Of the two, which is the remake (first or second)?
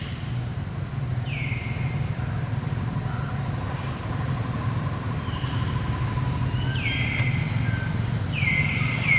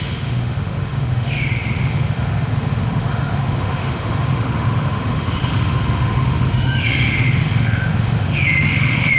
second